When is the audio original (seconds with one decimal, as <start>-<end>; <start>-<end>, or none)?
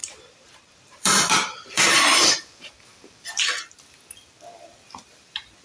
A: 3.4-5.6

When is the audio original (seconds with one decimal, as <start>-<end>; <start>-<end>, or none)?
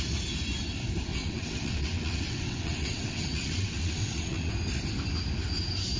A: 0.0-1.1; 4.5-6.0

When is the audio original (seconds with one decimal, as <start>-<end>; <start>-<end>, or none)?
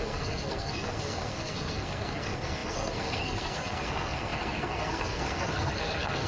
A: none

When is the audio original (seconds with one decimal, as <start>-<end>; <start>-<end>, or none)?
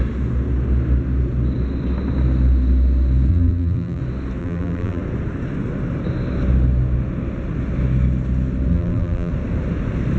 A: 0.0-3.3; 4.0-4.4; 5.0-8.7; 9.3-10.2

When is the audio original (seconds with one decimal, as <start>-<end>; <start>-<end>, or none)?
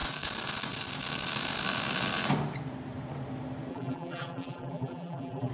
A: 0.0-3.7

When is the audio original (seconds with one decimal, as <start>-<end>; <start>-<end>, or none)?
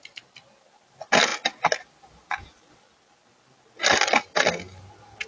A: 0.0-5.3